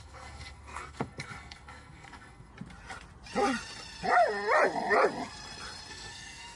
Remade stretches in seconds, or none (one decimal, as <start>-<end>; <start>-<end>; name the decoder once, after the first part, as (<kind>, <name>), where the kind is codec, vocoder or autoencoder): 0.0-2.5 (codec, SNAC); 5.9-6.6